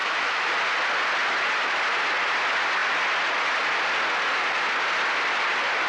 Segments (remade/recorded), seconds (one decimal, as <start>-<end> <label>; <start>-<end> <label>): 0.0-0.5 remade; 0.5-5.9 recorded